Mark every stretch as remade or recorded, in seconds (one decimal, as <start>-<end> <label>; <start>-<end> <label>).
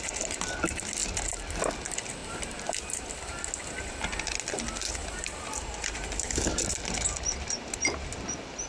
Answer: 0.0-2.2 recorded; 2.2-3.1 remade; 3.1-5.0 recorded; 5.0-6.6 remade; 6.6-8.7 recorded